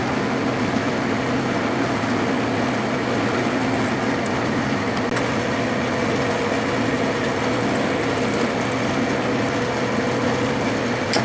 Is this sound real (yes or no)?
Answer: yes